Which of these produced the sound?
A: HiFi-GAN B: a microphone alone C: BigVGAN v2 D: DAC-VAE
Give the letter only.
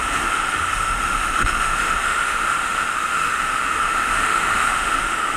D